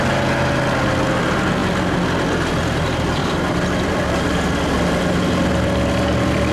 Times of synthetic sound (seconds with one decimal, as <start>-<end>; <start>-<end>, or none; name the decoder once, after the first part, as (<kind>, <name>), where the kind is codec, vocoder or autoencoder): 3.2-4.9 (vocoder, BigVGAN v2)